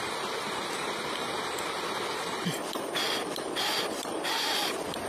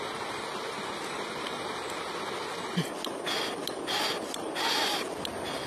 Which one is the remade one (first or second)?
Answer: first